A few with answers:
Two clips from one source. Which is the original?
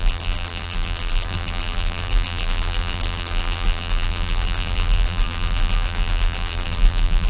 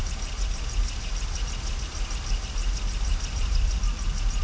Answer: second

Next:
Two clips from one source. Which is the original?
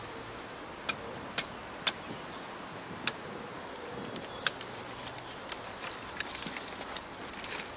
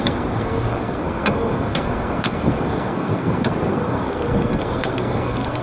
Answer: first